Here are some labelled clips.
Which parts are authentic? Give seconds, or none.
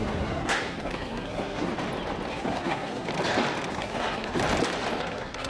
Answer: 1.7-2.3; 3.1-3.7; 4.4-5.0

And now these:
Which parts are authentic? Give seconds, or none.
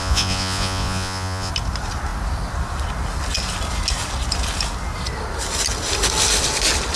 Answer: 1.5-7.0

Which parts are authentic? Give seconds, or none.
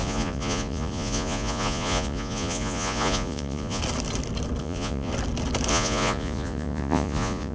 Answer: 3.8-4.6; 5.1-5.7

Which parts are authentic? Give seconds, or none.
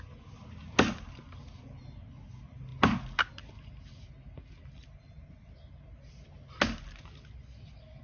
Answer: 0.0-8.0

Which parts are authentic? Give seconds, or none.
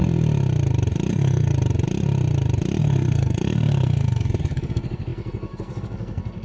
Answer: 0.0-1.1; 1.5-2.8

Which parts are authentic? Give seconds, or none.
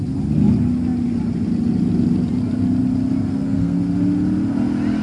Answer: 0.0-3.3; 3.8-5.0